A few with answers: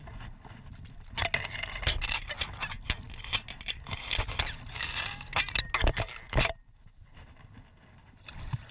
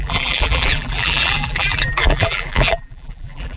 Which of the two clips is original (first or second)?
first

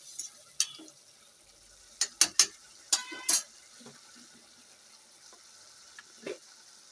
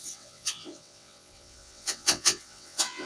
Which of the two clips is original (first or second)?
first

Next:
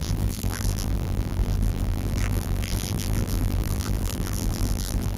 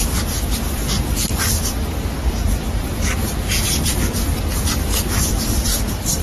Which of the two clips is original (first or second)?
second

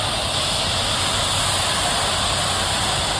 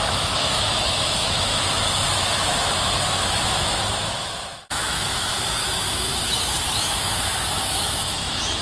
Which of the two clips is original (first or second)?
first